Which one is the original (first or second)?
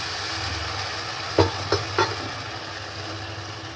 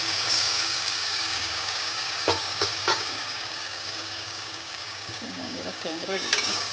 first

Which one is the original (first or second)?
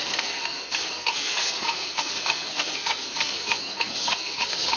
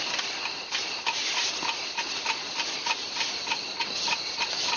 second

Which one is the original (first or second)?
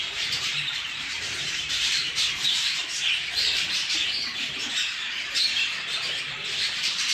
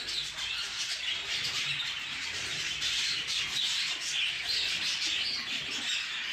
second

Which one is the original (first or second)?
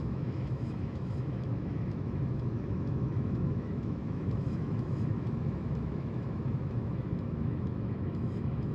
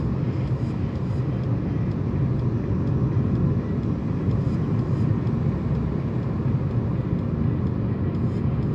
second